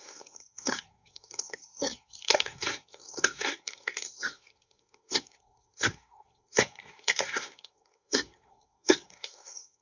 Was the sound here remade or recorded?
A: remade